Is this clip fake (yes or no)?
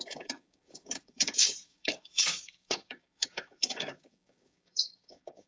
yes